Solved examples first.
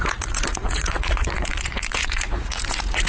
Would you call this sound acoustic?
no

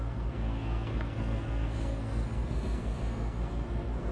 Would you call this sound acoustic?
no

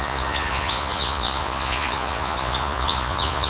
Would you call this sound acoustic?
no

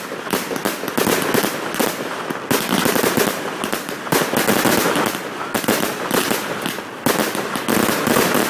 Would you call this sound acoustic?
yes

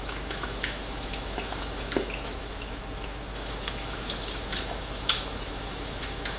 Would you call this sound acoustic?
no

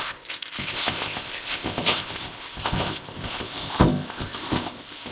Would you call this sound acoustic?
no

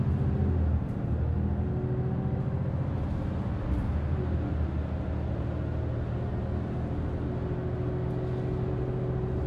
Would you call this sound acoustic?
yes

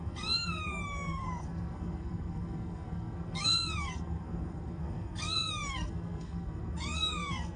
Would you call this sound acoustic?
no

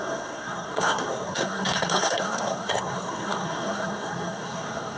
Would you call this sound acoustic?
no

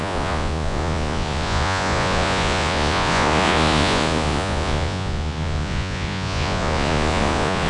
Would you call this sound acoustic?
no